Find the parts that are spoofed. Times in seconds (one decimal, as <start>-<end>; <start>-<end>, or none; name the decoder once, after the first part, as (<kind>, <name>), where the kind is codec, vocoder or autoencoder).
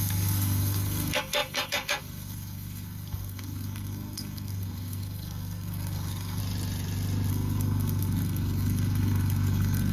0.0-6.4 (codec, SNAC); 7.3-9.9